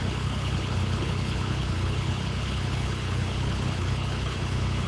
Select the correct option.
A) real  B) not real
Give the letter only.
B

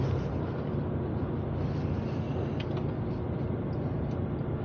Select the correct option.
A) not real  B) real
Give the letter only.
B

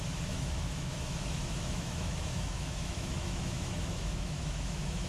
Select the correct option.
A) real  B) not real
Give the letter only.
B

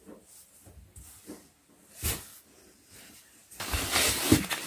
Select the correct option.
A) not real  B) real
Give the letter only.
B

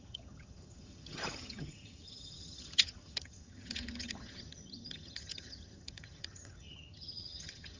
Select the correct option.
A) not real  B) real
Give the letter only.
A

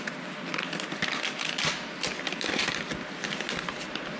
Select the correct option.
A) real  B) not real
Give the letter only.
A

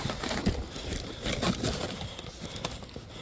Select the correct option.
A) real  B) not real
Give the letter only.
A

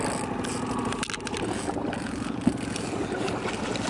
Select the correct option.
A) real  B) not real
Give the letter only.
A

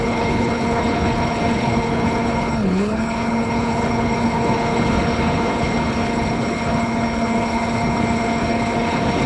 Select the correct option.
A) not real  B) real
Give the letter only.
A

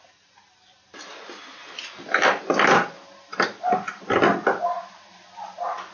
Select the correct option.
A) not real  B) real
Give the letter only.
B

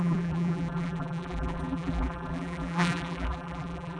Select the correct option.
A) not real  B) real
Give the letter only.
A